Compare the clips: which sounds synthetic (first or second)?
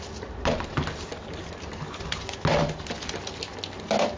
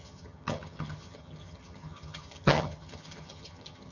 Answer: second